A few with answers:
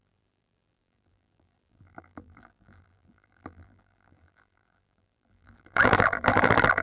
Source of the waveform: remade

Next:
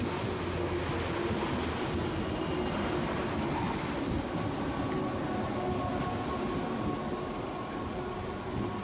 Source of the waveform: recorded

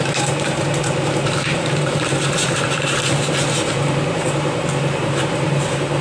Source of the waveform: remade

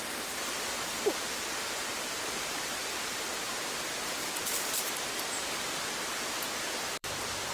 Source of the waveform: remade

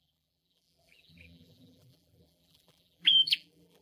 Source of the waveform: remade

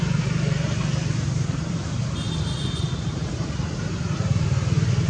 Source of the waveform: remade